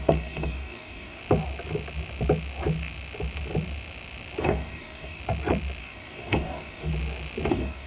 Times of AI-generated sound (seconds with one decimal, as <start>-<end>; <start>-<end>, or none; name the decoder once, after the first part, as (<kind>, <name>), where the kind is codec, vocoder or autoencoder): 0.0-1.2 (codec, DAC); 4.4-5.2; 5.8-6.9; 7.5-7.9